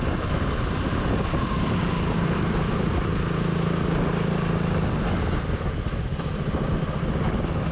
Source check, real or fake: real